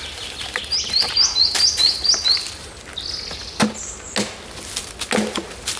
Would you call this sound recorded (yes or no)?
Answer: yes